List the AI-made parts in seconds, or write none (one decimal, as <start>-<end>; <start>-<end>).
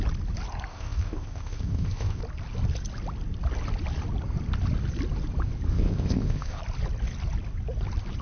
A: 0.7-2.2; 5.7-6.6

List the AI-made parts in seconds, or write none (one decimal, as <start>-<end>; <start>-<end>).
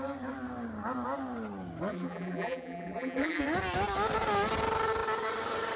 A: 1.9-3.4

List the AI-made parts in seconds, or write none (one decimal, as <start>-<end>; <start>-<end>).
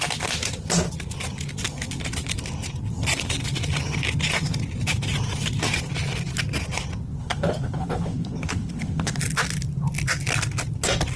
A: 7.2-9.2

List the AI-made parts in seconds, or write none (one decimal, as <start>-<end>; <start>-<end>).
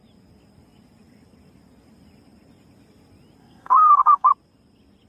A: 3.4-4.3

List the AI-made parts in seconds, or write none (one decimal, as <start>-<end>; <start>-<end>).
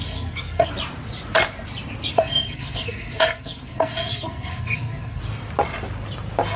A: 0.0-0.7; 2.1-5.2